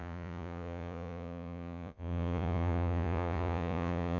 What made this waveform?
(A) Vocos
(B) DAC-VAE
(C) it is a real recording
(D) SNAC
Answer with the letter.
A